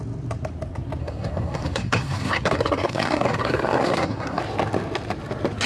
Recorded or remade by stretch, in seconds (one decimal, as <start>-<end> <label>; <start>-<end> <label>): 0.0-1.0 recorded; 1.0-4.4 remade; 4.4-5.7 recorded